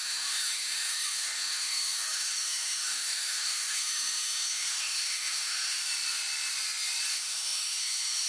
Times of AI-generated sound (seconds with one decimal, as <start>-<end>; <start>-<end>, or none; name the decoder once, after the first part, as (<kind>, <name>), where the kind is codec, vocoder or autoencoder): 0.0-5.8 (autoencoder, DAC-VAE); 7.1-8.3